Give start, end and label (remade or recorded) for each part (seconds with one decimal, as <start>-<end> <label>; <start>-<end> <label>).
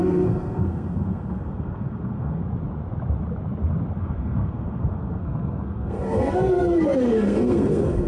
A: 0.0-2.4 remade; 2.4-4.0 recorded; 4.0-8.1 remade